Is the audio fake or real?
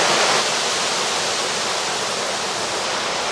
real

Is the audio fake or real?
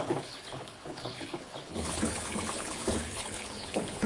fake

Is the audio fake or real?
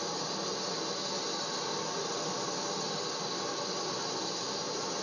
real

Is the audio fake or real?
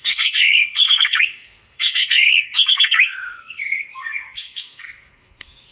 fake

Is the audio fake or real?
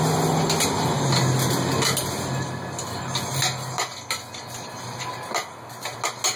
real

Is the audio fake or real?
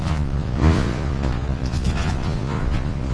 fake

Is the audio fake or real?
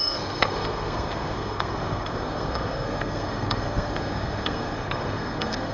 fake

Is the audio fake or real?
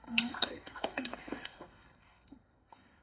fake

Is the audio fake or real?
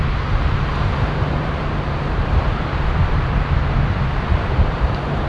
fake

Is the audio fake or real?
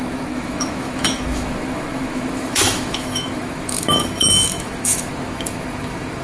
fake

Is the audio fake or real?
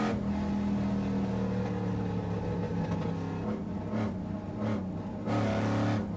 real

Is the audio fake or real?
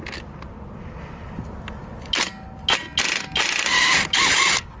real